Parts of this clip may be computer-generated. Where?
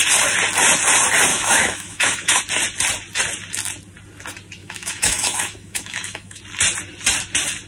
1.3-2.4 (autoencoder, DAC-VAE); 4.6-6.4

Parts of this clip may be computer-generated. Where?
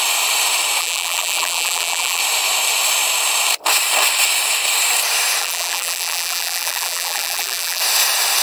0.8-2.2 (vocoder, BigVGAN v2); 5.4-7.8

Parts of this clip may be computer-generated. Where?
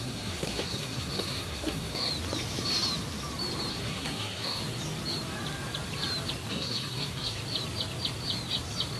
0.0-2.1 (codec, SNAC); 3.7-4.6; 6.5-7.4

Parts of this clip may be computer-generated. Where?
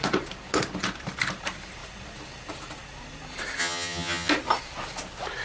3.6-4.3 (vocoder, HiFi-GAN)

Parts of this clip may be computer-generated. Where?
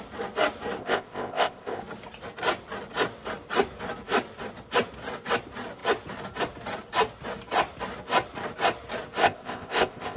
0.8-1.8 (codec, ZipCodec); 9.2-10.2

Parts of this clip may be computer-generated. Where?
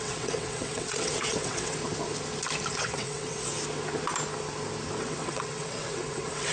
0.0-1.8 (vocoder, WaveNeXt); 2.7-3.5; 5.0-6.5